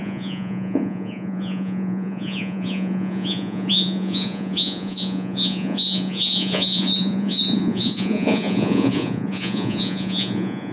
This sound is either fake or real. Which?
fake